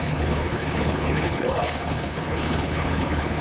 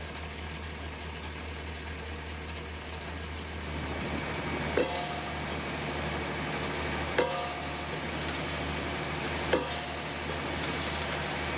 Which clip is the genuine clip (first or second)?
second